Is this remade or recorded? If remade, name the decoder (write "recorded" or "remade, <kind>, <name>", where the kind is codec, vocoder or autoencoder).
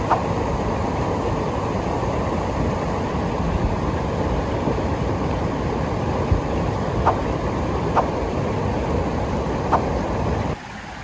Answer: recorded